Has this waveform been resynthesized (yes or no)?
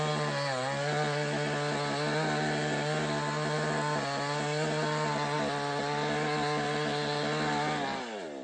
no